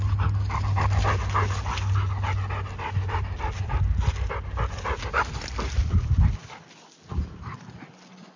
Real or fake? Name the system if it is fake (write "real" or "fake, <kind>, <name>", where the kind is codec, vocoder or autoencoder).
real